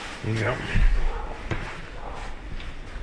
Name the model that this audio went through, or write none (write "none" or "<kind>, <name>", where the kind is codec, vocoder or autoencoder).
none